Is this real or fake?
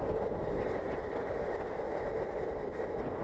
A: real